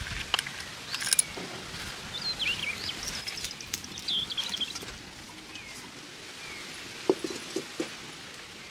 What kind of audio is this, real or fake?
real